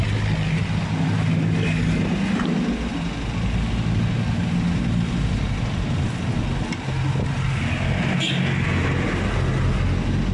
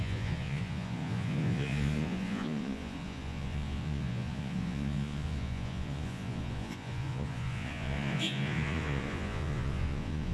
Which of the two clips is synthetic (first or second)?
second